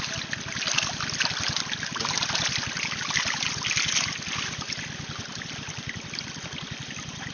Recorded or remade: recorded